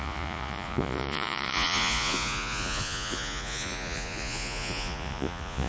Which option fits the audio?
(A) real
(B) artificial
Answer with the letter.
B